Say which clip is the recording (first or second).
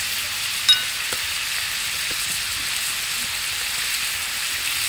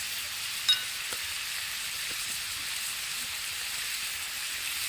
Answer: first